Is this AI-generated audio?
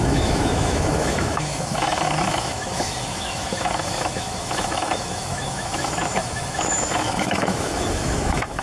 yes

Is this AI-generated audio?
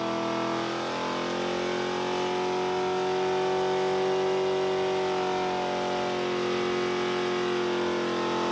no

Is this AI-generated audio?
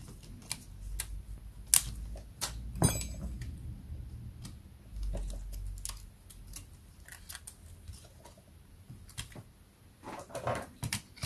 no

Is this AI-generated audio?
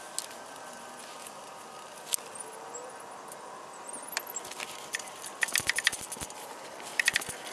no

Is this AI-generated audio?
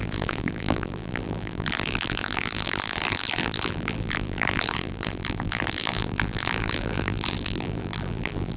yes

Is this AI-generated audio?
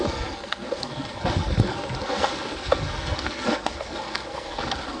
yes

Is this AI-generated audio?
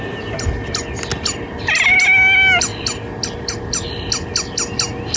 no